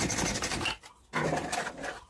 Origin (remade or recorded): recorded